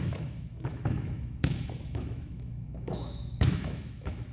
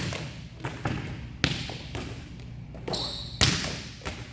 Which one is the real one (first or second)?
second